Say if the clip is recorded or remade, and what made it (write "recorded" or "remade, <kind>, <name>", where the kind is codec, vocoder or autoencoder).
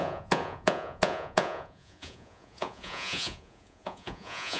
remade, vocoder, Vocos